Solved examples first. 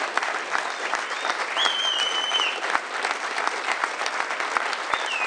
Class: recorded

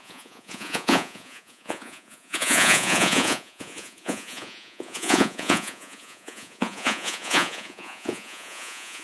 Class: remade